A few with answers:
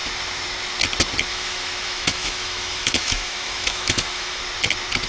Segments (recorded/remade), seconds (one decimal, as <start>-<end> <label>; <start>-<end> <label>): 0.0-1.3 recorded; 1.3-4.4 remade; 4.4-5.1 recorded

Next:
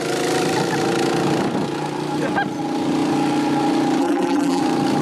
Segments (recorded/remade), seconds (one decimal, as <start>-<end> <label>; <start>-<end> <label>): 0.0-4.0 recorded; 4.0-4.6 remade; 4.6-5.0 recorded

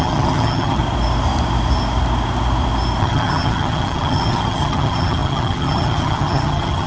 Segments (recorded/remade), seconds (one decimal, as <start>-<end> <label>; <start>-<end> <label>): 0.0-0.8 remade; 0.8-3.0 recorded; 3.0-6.9 remade

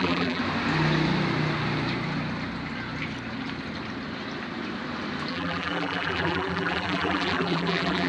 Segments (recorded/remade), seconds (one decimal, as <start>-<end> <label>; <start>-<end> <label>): 0.0-0.4 remade; 0.4-5.3 recorded; 5.3-8.1 remade